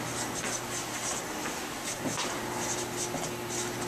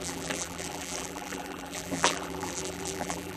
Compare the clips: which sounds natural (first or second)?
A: first